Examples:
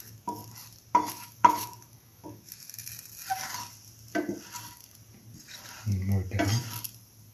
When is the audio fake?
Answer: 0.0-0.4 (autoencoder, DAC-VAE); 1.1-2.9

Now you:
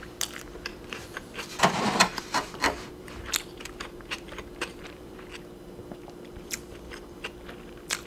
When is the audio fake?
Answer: 0.7-5.3 (vocoder, BigVGAN v2)

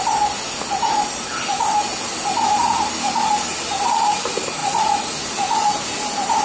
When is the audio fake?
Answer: 4.6-5.1 (vocoder, Vocos)

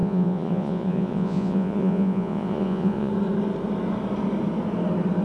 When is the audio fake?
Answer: 0.0-3.1 (vocoder, Vocos)

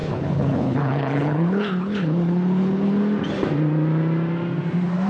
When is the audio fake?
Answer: 0.0-3.0 (codec, HILCodec)

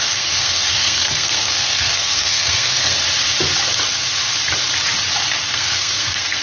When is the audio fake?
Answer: 0.0-3.0 (codec, SNAC); 5.5-6.4